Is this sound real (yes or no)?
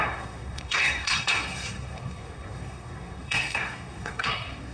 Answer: no